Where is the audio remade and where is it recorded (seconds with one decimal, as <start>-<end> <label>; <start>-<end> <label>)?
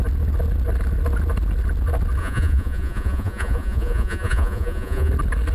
0.0-2.2 recorded; 2.2-5.1 remade; 5.1-5.5 recorded